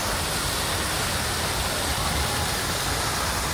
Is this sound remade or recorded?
recorded